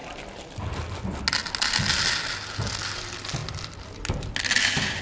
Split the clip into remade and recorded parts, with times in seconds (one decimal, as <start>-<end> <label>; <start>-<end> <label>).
0.0-5.0 recorded